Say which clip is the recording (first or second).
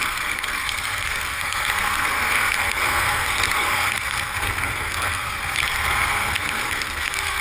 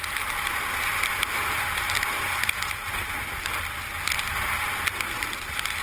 second